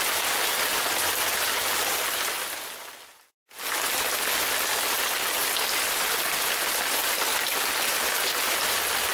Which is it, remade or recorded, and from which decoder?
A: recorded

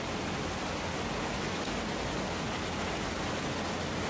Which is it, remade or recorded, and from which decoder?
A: recorded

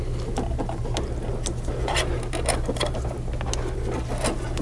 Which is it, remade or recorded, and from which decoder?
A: recorded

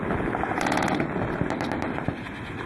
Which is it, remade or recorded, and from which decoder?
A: recorded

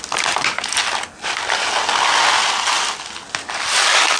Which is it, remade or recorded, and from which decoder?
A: recorded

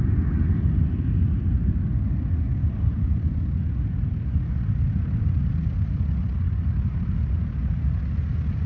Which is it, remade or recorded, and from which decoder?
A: recorded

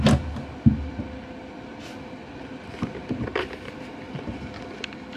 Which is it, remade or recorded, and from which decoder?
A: recorded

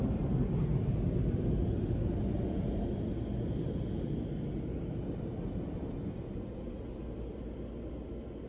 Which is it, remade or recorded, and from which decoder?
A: recorded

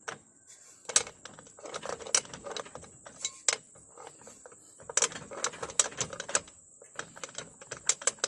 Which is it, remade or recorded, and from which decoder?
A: recorded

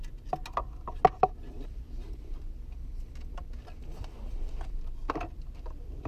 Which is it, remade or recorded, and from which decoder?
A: recorded